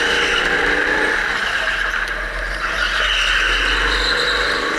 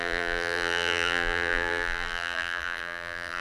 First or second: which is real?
first